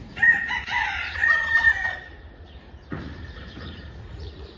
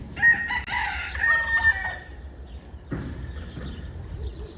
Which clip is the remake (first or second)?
first